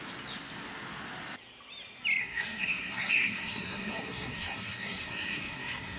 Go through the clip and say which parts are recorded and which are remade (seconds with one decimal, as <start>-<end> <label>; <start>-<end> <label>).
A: 0.0-2.2 recorded; 2.2-6.0 remade